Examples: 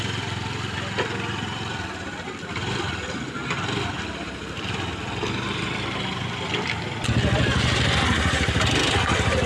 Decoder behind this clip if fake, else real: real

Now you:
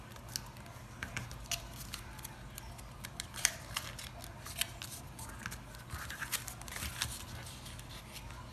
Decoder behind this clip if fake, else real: real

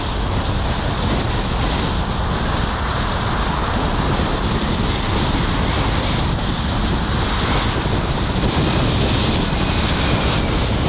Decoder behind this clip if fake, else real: real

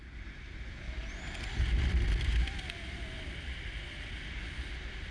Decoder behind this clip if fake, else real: real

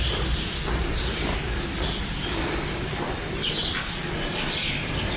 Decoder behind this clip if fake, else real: real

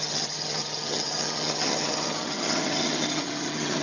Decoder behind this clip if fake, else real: fake, vocoder, HiFi-GAN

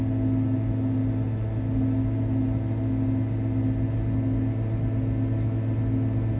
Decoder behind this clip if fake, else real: real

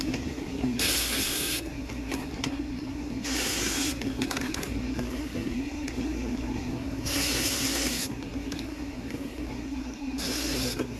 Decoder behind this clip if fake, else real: fake, codec, SNAC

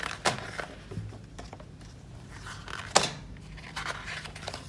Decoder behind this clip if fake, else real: real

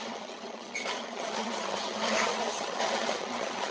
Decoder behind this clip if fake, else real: fake, vocoder, HiFi-GAN